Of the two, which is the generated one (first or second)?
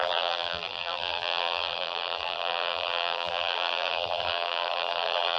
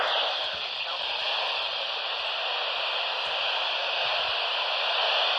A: first